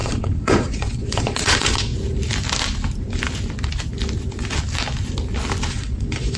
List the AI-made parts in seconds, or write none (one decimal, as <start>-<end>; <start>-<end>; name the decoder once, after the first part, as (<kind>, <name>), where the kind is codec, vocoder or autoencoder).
0.0-1.9 (vocoder, Vocos); 5.7-6.4